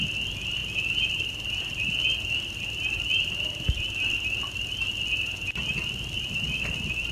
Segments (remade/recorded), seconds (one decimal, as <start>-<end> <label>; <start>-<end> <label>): 0.0-7.1 recorded